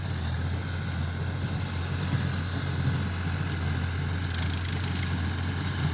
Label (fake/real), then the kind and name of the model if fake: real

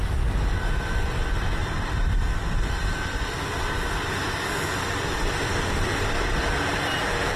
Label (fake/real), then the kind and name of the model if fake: fake, vocoder, BigVGAN v2